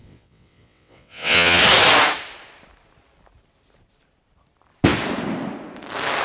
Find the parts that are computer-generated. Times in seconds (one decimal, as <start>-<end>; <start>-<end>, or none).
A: 0.0-1.6